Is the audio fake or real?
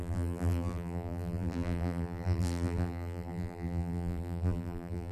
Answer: fake